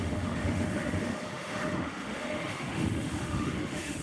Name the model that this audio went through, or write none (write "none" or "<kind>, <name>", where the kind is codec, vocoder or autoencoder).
autoencoder, DAC-VAE